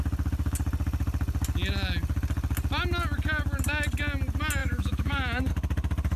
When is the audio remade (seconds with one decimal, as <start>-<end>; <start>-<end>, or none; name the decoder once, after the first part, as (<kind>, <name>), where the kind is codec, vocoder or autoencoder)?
4.6-5.5 (autoencoder, DAC-VAE)